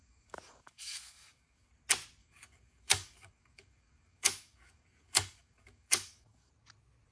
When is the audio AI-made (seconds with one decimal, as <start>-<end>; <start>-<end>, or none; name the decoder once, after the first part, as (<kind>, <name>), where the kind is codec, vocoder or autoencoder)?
0.0-1.7 (codec, DAC); 2.2-6.5